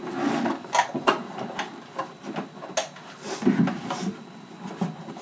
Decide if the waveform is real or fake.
real